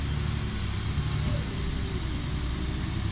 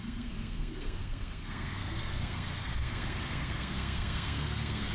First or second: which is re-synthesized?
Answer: second